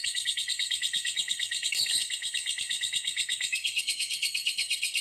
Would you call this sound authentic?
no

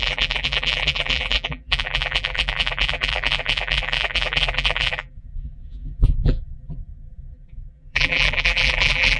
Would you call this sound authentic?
no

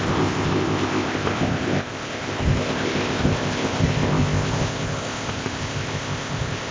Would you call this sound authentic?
no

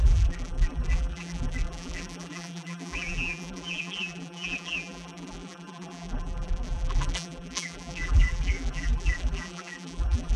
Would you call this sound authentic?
no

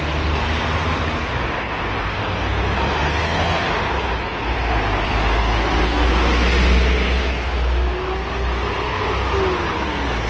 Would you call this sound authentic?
yes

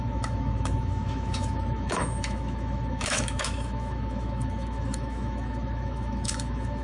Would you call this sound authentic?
no